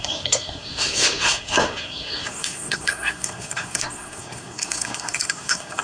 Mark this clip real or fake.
fake